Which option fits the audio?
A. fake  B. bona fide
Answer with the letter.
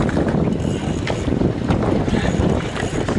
B